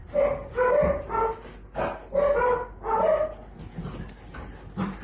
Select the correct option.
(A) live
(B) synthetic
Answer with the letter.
A